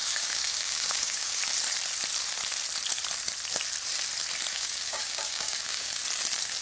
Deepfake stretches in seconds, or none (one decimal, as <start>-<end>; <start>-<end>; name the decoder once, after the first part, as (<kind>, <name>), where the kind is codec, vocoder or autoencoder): 0.0-1.4 (codec, DAC); 4.5-6.0